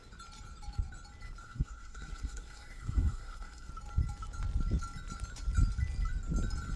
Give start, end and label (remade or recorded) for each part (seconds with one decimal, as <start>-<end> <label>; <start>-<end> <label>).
0.0-1.4 recorded; 1.4-3.7 remade; 3.7-6.8 recorded